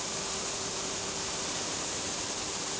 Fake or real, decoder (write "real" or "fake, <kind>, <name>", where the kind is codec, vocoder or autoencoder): fake, vocoder, BigVGAN v2